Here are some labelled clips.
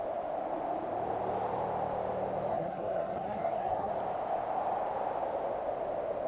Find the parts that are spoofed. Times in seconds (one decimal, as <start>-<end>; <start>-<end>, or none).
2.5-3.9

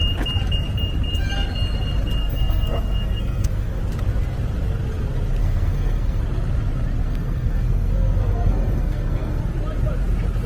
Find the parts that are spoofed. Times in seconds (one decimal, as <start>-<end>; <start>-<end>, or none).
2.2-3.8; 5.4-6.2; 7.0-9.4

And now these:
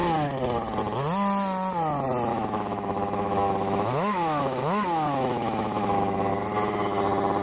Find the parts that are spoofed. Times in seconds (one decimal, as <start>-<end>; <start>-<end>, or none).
2.3-6.3

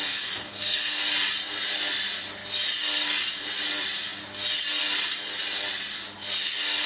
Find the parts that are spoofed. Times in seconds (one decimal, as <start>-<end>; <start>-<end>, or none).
0.0-1.0

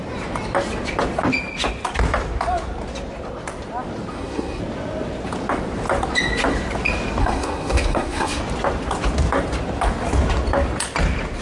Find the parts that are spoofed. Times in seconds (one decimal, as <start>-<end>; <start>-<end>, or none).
4.1-4.6; 7.2-8.4

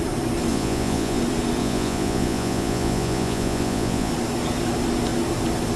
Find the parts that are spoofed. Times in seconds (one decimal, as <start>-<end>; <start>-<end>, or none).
0.5-1.2; 1.6-4.1

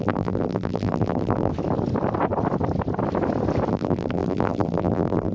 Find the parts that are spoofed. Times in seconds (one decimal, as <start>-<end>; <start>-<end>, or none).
0.0-1.5; 3.7-5.3